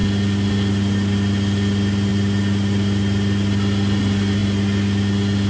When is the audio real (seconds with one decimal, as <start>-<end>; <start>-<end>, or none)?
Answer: 0.0-5.5